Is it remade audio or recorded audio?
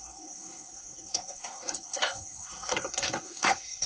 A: remade